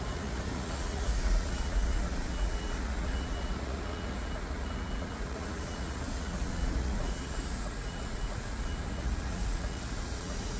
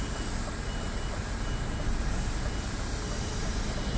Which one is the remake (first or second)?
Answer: first